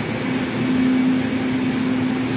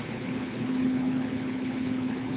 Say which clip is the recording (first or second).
first